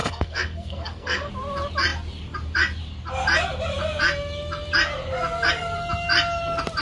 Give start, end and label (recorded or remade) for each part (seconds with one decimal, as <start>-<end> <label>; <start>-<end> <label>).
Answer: 0.0-1.3 remade; 1.3-6.8 recorded